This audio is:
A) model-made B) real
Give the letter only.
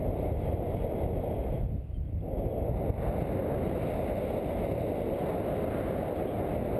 B